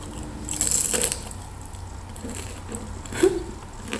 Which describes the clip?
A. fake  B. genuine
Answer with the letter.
B